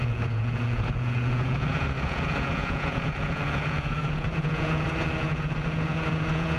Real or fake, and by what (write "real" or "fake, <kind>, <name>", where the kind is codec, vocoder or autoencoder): fake, vocoder, Vocos